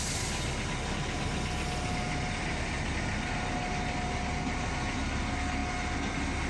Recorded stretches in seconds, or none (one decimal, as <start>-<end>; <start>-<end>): 0.0-6.5